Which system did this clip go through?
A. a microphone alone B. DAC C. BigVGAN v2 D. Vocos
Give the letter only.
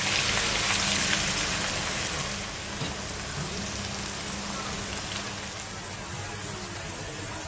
A